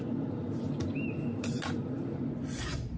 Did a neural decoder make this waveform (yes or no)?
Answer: no